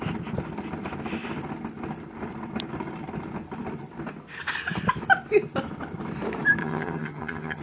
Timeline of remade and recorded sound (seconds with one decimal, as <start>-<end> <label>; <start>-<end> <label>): 0.0-6.6 recorded; 6.6-7.6 remade